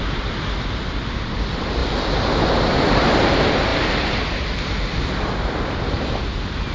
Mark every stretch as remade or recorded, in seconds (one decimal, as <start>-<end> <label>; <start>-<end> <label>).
0.0-6.7 recorded